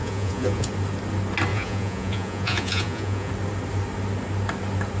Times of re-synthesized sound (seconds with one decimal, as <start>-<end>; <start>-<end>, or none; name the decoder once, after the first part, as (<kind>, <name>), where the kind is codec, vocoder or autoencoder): 0.0-0.7 (vocoder, Vocos); 1.5-3.3